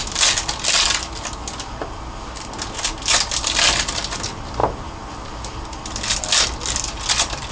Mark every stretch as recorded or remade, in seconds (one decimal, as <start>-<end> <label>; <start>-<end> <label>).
0.0-7.5 recorded